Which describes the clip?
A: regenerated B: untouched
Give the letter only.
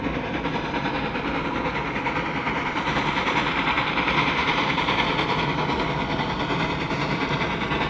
B